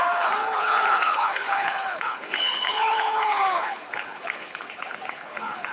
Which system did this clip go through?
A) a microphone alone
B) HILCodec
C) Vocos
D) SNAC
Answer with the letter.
B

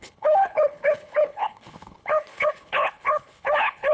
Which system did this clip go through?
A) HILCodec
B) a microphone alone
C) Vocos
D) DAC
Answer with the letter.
A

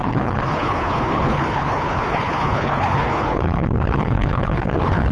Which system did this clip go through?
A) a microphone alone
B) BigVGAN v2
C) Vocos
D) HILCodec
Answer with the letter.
D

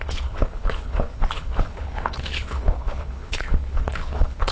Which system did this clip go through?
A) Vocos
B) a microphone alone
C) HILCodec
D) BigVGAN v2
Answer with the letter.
C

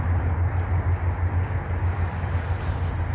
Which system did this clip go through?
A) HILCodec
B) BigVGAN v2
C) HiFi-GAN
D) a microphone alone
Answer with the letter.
D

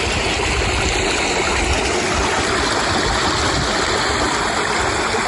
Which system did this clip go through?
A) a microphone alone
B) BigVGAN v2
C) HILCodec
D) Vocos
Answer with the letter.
A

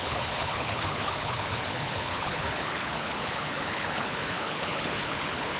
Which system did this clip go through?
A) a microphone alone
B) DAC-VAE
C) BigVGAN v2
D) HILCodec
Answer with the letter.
D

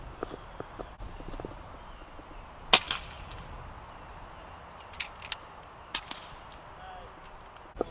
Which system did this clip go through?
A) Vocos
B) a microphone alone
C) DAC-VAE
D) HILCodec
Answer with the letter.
B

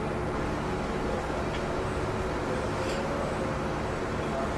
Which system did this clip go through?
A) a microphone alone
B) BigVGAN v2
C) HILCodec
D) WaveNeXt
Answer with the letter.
A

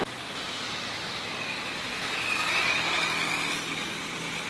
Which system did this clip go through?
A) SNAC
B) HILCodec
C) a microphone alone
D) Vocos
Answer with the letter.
C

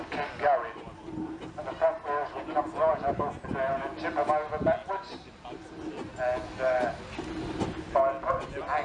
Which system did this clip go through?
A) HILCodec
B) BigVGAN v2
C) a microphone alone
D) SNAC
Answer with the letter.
C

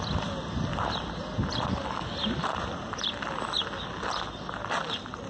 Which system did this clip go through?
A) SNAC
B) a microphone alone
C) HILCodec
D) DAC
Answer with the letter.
B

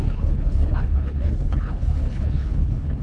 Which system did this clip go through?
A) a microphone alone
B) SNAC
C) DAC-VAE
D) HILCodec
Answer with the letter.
D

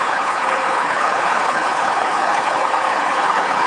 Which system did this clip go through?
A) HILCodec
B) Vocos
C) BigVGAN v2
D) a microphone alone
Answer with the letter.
A